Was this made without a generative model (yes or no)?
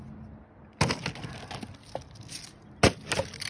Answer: yes